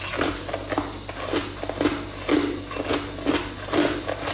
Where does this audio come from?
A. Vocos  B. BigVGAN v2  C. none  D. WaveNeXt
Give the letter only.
C